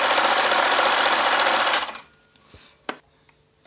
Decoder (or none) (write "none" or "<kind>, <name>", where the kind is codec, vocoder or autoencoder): none